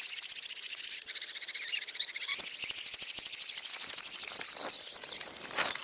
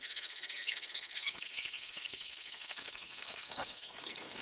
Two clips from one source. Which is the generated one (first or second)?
second